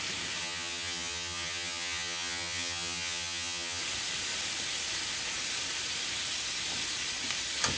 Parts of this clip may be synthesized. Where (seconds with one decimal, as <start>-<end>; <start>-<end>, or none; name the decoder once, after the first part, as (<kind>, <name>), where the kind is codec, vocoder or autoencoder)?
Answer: 0.4-3.8 (vocoder, HiFi-GAN)